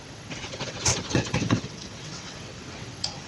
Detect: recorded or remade remade